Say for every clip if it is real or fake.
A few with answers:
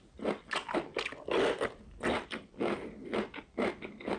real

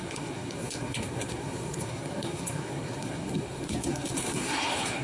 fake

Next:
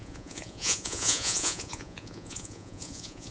fake